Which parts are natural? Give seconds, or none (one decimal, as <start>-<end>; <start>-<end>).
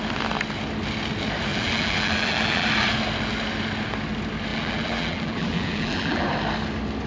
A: 0.0-1.5; 2.7-4.5; 6.3-7.1